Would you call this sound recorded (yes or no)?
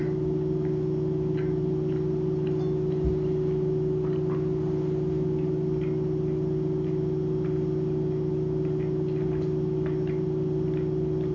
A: yes